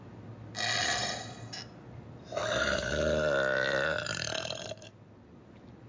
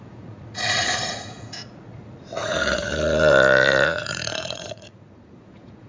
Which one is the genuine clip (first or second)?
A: first